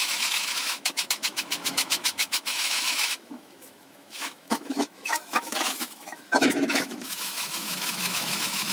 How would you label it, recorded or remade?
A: remade